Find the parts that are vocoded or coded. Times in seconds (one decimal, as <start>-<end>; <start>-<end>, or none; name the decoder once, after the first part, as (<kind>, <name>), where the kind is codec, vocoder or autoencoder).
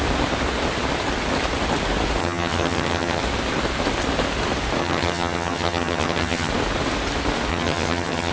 2.2-3.2 (vocoder, HiFi-GAN); 4.8-6.5; 7.5-8.3